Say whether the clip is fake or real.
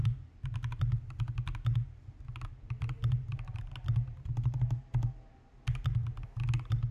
real